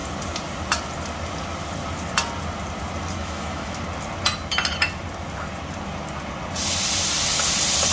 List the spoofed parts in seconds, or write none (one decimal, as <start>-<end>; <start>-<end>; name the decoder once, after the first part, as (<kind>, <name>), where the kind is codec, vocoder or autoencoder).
3.2-3.8 (autoencoder, DAC-VAE)